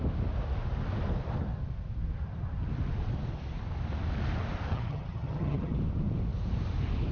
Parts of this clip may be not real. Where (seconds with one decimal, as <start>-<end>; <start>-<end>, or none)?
4.7-5.7